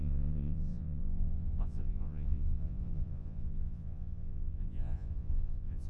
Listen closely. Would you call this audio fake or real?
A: fake